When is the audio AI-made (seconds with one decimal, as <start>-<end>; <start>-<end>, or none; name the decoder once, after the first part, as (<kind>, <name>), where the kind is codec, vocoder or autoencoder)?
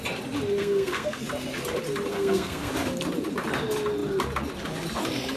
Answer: 0.6-1.2 (codec, SNAC); 2.1-2.7